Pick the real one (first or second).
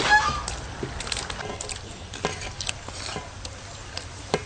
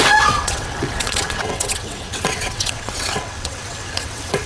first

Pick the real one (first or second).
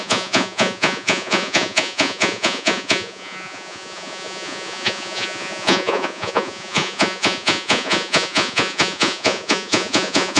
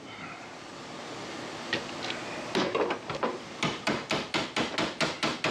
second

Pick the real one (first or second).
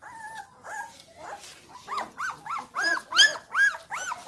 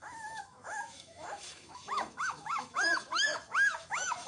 first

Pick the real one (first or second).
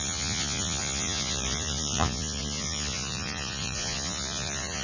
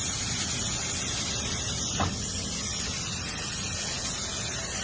second